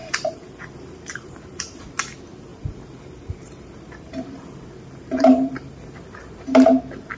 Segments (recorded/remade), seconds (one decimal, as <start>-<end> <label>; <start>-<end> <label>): 0.0-1.8 remade; 1.8-2.5 recorded; 2.5-6.8 remade; 6.8-7.2 recorded